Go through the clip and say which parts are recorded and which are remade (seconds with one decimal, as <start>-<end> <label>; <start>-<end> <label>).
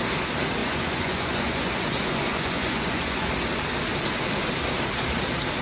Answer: 0.0-0.6 recorded; 0.6-3.3 remade; 3.3-5.6 recorded